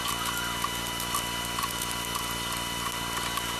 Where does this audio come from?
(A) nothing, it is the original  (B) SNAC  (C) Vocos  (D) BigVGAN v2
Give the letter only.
A